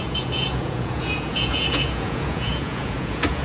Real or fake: fake